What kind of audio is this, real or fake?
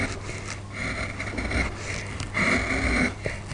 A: real